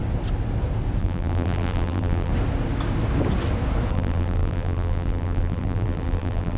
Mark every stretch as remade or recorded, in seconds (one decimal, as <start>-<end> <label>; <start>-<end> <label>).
0.0-1.0 recorded; 1.0-2.3 remade; 2.3-3.9 recorded; 3.9-6.6 remade